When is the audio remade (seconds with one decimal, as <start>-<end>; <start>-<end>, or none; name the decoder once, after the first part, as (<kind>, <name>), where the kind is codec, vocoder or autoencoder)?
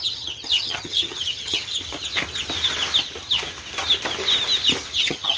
0.0-1.8 (vocoder, HiFi-GAN); 5.0-5.4